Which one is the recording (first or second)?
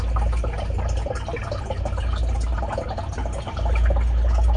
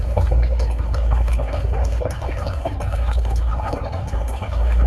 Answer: first